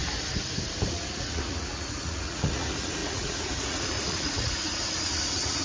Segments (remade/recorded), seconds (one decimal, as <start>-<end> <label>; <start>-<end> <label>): 0.0-0.9 recorded; 0.9-5.6 remade

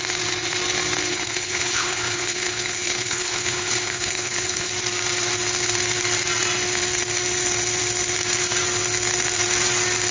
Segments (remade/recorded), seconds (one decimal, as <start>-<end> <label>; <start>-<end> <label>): 0.0-1.1 recorded; 1.1-4.7 remade; 4.7-10.1 recorded

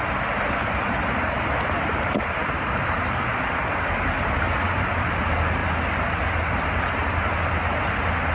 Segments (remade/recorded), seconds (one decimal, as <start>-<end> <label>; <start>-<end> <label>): 0.0-2.4 recorded; 2.4-3.6 remade; 3.6-8.3 recorded

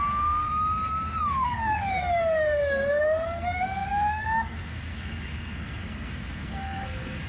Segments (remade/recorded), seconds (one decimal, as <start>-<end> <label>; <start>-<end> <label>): 0.0-0.5 remade; 0.5-1.3 recorded; 1.3-7.3 remade

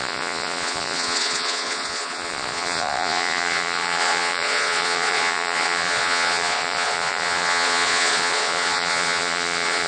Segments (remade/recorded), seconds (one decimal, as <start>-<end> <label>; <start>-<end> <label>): 0.0-9.9 remade

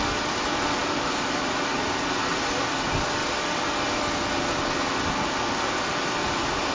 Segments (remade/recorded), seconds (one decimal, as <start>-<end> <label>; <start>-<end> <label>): 0.0-6.7 recorded